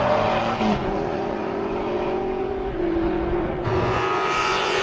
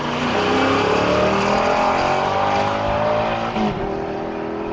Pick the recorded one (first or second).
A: second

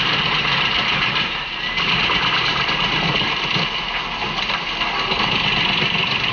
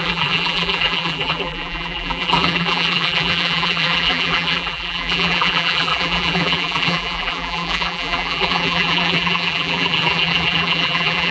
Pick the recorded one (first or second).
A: first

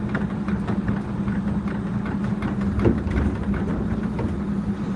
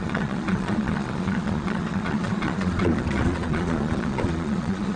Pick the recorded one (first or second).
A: first